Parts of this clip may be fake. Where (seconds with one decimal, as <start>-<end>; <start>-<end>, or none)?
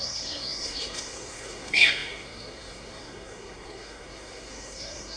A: 0.0-5.2